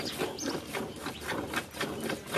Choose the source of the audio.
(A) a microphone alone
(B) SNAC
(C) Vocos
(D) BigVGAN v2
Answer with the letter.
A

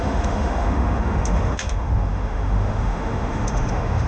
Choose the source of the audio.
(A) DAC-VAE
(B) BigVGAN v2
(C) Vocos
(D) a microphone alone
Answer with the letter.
A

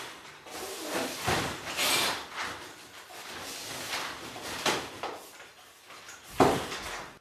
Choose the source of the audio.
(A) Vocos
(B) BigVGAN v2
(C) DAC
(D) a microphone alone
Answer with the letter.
D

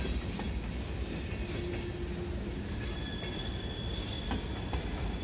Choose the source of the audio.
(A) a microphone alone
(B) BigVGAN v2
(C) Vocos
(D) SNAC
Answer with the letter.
A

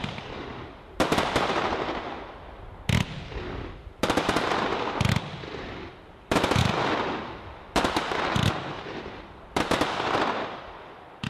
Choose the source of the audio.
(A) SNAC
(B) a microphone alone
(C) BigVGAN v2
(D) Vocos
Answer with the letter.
B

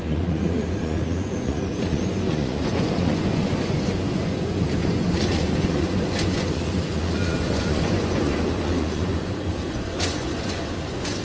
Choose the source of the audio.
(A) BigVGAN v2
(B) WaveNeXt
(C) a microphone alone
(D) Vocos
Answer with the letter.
D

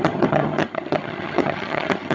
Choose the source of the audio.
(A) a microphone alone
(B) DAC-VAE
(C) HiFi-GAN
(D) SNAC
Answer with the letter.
C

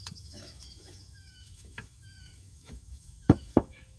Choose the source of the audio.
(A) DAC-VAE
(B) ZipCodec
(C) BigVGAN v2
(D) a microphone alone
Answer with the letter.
A